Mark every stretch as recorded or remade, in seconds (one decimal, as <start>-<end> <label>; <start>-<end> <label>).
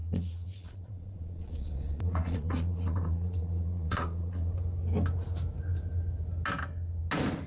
0.0-4.5 remade; 4.5-7.5 recorded